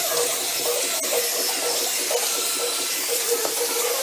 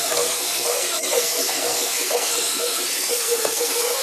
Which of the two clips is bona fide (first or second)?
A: first